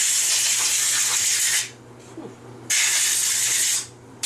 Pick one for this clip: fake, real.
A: real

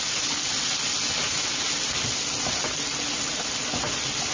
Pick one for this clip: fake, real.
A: real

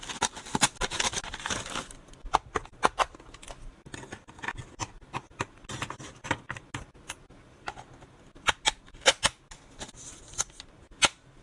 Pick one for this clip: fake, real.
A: real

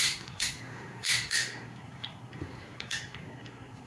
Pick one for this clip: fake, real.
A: fake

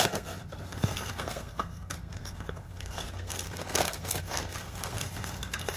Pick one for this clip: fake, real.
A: fake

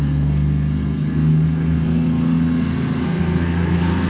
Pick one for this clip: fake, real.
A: fake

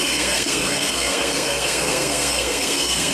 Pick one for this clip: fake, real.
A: fake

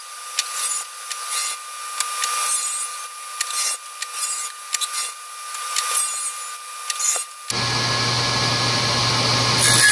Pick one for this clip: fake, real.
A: real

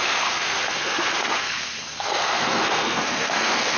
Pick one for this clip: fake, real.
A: fake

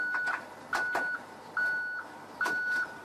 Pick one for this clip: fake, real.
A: real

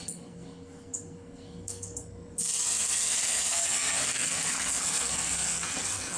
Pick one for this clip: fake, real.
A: fake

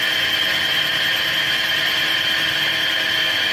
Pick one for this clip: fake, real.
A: real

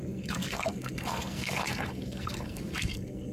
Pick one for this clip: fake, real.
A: fake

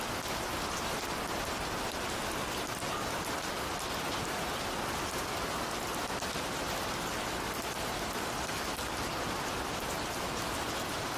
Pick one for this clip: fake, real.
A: real